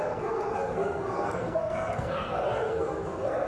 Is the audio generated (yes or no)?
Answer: yes